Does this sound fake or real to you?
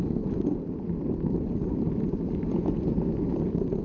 real